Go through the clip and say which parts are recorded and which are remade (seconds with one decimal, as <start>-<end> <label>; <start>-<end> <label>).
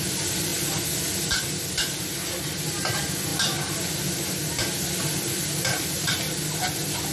0.0-7.1 recorded